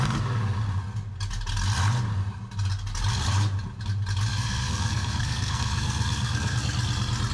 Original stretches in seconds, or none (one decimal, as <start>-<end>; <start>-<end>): 0.0-4.3; 6.7-7.3